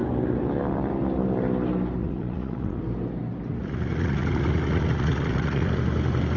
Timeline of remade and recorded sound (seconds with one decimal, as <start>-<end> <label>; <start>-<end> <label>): 0.0-2.0 recorded; 2.0-2.8 remade; 2.8-3.5 recorded; 3.5-5.7 remade; 5.7-6.4 recorded